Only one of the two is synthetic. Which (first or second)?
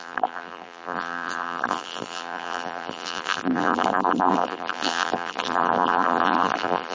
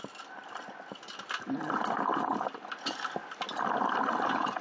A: first